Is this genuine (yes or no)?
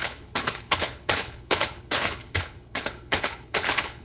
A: no